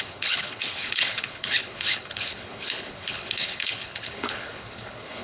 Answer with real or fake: fake